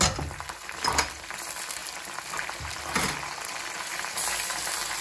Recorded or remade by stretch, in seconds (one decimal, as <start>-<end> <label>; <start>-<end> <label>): 0.0-5.0 recorded